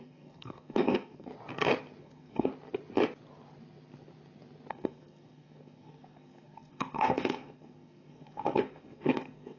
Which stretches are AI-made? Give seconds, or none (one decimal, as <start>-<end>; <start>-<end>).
0.0-1.3; 2.0-2.5; 4.7-9.6